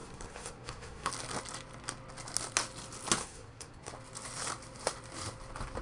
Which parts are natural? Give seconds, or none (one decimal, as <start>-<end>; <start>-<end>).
1.1-3.2; 3.9-5.8